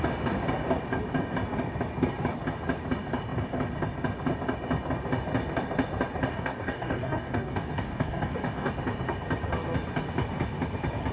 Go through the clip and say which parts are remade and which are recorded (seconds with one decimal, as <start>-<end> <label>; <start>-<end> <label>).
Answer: 0.0-6.3 recorded; 6.3-8.7 remade; 8.7-11.1 recorded